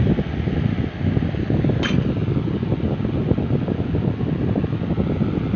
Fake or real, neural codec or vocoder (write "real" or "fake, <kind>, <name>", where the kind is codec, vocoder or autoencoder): real